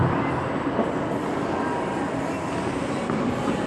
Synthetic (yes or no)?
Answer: no